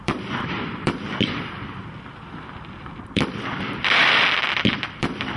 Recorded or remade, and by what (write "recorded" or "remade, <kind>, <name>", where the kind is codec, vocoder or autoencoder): remade, vocoder, BigVGAN v2